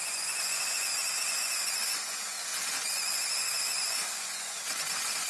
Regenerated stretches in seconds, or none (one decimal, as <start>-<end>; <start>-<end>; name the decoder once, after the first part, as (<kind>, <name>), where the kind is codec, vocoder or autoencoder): 0.0-5.3 (vocoder, Vocos)